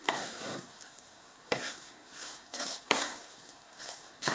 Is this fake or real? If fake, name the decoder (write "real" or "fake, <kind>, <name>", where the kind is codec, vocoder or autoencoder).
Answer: fake, codec, SNAC